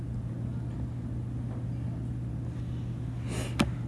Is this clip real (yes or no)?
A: yes